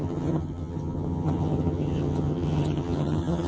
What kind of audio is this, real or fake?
fake